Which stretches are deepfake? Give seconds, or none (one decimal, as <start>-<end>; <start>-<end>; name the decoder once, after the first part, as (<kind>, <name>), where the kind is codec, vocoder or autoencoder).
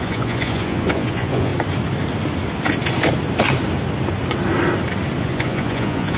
0.0-1.5 (vocoder, Vocos); 5.2-6.2